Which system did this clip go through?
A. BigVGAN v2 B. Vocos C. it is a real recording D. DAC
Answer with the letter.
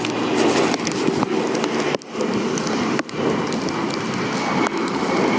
C